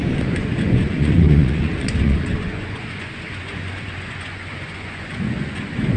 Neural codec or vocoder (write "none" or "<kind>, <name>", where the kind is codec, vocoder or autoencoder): vocoder, Vocos